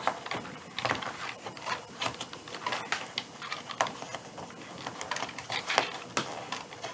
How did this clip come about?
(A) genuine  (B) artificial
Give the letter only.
A